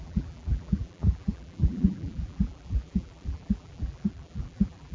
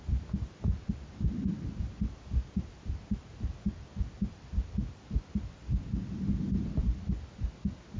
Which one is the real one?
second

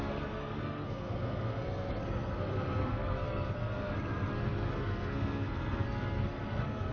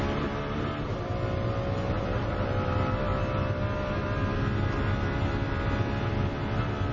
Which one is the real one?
second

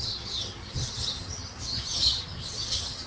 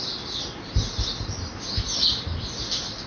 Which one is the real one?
second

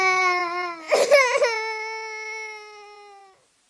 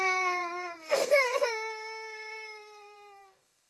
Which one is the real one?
first